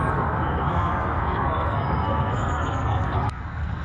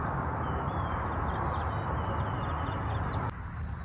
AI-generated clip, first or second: first